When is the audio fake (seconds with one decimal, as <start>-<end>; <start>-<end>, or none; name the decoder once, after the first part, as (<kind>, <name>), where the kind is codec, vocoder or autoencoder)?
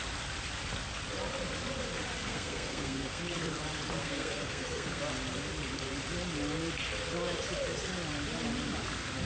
2.1-3.2 (codec, SNAC); 4.0-5.0